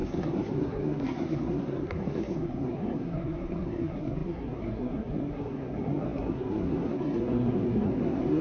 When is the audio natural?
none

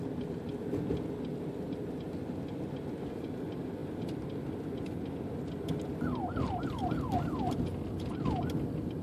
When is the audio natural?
0.0-9.0

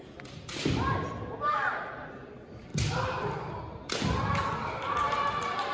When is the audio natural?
0.0-5.7

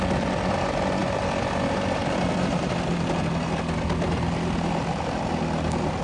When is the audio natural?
0.0-6.0

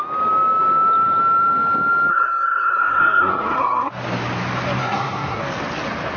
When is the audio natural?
0.0-2.1; 3.9-4.8; 5.4-6.2